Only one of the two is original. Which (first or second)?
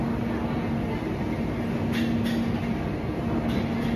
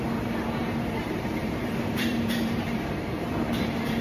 first